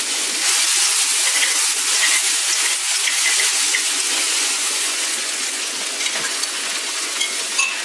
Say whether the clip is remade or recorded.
remade